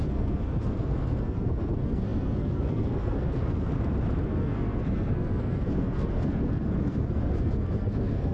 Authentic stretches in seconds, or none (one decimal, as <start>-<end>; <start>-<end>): 3.7-4.2